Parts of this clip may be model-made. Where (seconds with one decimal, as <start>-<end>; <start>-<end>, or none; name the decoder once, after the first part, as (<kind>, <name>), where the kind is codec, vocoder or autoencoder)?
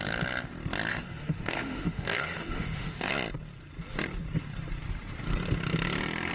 0.9-3.1 (autoencoder, DAC-VAE)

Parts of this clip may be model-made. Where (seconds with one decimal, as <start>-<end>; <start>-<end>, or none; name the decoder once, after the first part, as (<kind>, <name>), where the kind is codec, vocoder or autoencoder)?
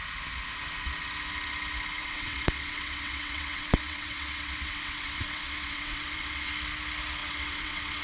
2.0-6.5 (vocoder, WaveNeXt); 7.2-8.0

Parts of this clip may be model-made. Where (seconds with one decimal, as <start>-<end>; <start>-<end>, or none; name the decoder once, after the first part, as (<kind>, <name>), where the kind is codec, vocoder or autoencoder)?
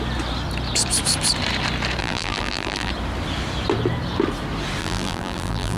2.0-2.9 (vocoder, BigVGAN v2); 4.8-5.8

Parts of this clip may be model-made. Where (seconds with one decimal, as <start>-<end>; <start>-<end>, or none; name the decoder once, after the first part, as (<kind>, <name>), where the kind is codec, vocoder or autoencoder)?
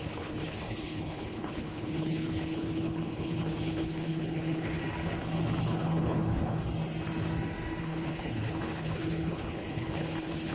0.0-4.8 (codec, HILCodec); 5.6-6.6; 7.8-10.5